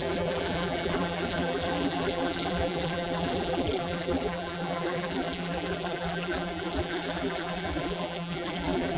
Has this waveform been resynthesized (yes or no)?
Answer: yes